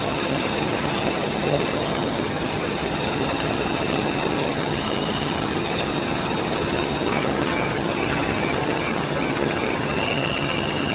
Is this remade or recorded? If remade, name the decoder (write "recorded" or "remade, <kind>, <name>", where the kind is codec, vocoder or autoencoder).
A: remade, vocoder, HiFi-GAN